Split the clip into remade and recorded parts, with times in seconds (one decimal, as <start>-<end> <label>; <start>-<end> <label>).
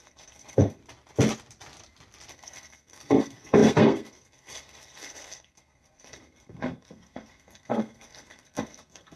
0.0-0.8 remade; 0.8-2.3 recorded; 2.3-9.2 remade